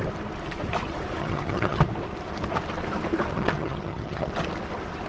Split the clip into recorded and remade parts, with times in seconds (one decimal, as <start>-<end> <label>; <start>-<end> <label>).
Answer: 0.0-1.2 recorded; 1.2-1.8 remade; 1.8-3.3 recorded; 3.3-4.3 remade; 4.3-5.1 recorded